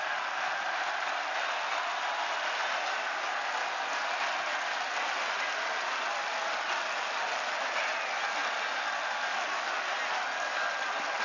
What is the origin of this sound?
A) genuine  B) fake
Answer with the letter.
A